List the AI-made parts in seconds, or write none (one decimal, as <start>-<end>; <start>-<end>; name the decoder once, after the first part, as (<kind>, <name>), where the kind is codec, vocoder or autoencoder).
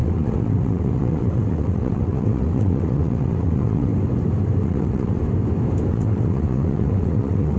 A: 0.0-3.9 (vocoder, WaveNeXt); 4.6-5.2; 5.9-7.6